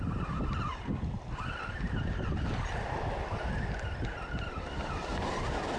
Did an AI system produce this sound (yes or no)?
no